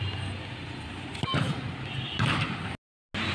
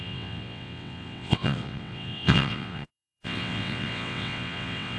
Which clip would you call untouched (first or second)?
first